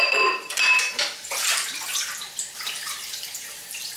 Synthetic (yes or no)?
yes